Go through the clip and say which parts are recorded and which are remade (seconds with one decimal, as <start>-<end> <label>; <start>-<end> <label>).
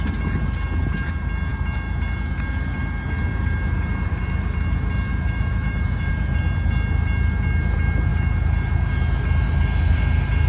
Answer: 0.0-5.1 recorded; 5.1-6.1 remade; 6.1-10.5 recorded